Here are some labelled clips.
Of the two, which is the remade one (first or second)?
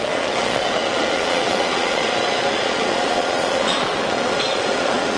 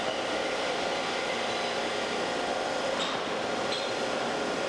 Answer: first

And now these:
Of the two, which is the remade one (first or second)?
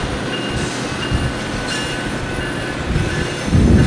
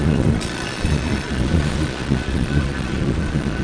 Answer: second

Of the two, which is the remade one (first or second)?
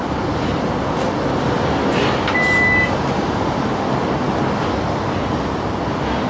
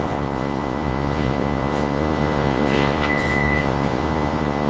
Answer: second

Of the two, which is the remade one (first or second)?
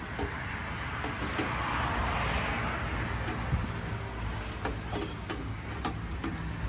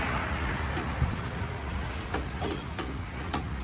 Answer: second